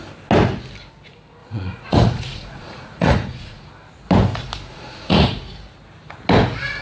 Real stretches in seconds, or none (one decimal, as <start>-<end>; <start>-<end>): 0.0-1.4; 3.7-4.7; 5.4-6.8